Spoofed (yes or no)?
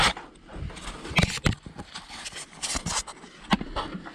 no